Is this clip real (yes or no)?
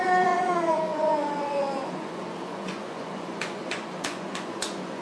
no